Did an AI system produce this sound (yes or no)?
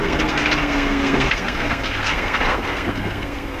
yes